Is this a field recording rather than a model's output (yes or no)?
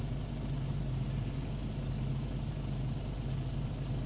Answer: yes